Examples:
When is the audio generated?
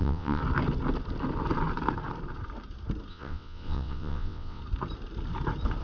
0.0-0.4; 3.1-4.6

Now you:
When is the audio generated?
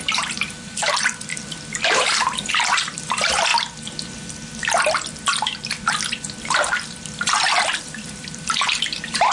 0.0-3.5; 6.4-9.3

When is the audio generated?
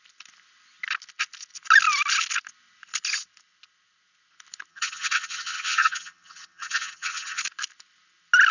4.7-7.4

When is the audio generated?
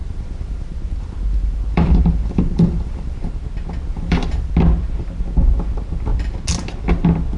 0.0-3.3; 3.9-4.5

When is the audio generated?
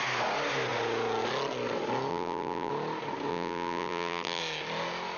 2.1-2.7; 3.3-4.4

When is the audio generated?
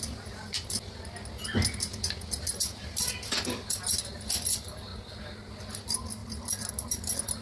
none